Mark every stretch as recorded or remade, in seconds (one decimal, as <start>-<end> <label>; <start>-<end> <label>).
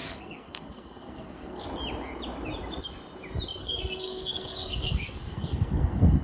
0.0-1.6 remade; 1.6-3.6 recorded; 3.6-6.2 remade